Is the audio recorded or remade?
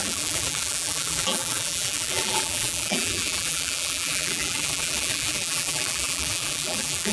remade